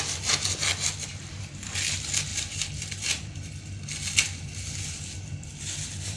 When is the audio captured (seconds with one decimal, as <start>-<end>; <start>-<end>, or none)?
0.0-2.3